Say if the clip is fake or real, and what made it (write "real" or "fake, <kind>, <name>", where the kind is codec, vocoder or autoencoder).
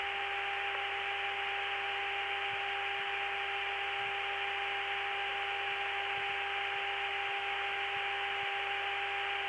real